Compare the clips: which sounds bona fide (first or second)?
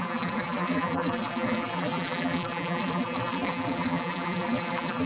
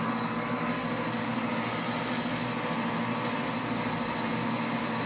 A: second